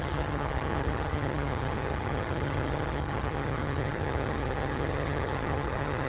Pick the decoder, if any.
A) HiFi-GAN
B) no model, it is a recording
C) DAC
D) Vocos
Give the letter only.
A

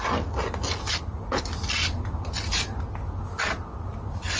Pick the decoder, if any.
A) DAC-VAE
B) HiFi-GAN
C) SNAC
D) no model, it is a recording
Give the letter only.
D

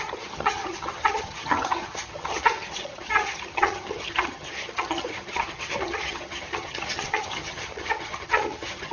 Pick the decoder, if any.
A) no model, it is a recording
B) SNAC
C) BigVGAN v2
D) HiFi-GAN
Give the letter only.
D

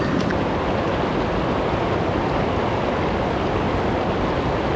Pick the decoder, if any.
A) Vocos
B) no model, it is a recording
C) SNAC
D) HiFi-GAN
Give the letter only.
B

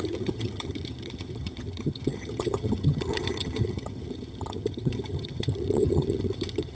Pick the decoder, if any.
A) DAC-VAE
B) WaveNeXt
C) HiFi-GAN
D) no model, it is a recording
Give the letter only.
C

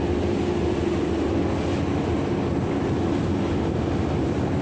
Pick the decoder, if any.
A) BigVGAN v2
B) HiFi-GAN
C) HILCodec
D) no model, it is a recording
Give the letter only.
D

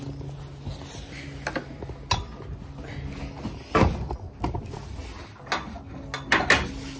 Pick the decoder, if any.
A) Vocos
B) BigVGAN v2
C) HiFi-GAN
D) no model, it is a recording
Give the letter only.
D